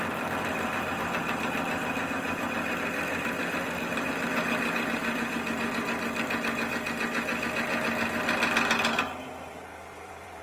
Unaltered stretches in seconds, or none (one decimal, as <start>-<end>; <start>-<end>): 0.0-9.7